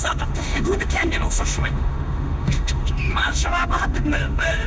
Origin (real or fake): fake